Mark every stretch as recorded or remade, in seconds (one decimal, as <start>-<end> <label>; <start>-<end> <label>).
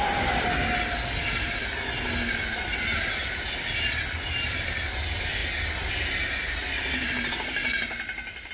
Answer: 0.0-8.5 recorded